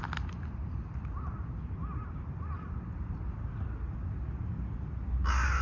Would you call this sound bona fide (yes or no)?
yes